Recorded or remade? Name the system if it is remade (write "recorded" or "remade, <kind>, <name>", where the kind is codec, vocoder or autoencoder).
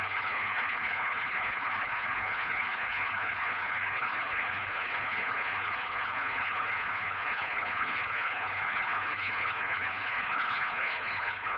remade, codec, HILCodec